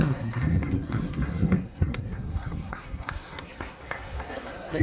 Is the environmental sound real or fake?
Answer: fake